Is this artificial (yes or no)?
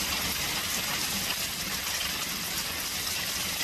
no